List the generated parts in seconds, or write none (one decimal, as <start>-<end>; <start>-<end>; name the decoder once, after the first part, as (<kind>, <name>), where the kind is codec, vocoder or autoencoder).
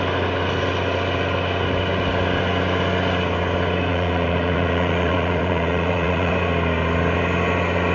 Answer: 3.9-6.3 (vocoder, Vocos)